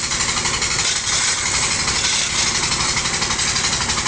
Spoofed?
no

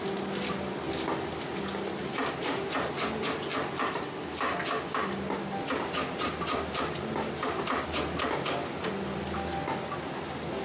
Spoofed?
no